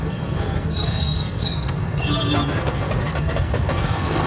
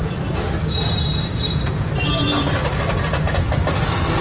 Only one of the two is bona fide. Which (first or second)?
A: second